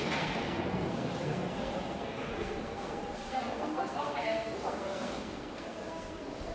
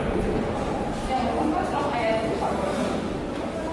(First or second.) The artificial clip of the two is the first